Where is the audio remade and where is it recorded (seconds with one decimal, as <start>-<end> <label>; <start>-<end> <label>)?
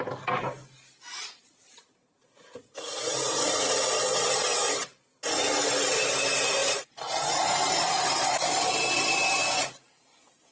0.0-10.5 recorded